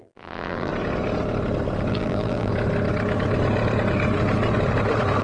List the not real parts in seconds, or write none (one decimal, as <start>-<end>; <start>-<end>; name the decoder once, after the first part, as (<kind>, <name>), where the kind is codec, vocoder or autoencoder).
0.0-0.7 (vocoder, BigVGAN v2); 1.9-2.5